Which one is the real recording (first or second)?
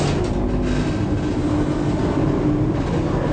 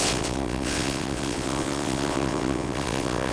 first